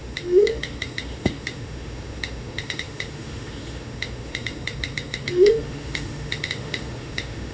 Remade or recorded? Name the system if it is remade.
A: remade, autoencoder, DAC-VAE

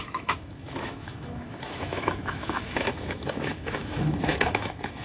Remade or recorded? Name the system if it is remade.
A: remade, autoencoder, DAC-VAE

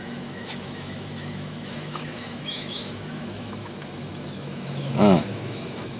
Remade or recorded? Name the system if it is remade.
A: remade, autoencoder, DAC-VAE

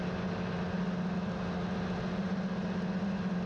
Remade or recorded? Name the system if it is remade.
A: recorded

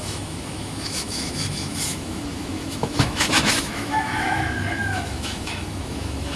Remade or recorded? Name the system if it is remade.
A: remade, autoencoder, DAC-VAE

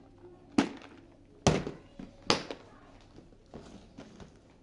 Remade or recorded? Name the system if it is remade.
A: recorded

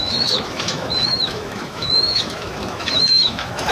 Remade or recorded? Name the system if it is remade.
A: remade, autoencoder, DAC-VAE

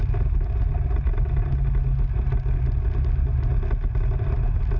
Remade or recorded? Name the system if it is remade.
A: recorded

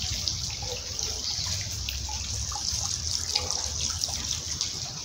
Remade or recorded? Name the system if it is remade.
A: recorded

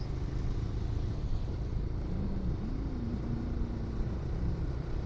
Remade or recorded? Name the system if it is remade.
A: recorded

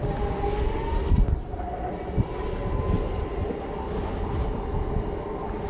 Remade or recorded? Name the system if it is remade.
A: recorded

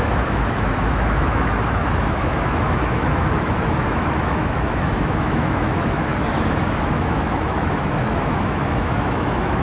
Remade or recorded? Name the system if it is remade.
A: remade, autoencoder, DAC-VAE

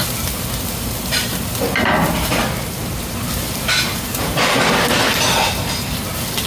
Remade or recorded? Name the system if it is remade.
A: recorded